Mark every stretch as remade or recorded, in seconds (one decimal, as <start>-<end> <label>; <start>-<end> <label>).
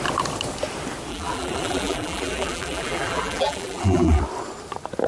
0.0-1.1 recorded; 1.1-4.2 remade; 4.2-5.1 recorded